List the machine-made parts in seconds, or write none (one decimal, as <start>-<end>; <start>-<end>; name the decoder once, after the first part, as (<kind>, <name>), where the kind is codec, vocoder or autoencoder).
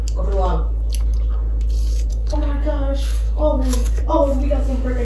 2.1-4.0 (codec, DAC)